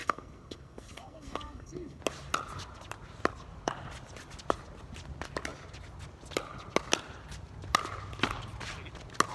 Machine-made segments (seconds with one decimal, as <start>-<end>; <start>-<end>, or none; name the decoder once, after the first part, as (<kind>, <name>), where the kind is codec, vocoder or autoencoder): 0.0-2.0 (codec, SNAC)